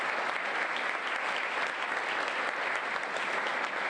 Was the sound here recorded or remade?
recorded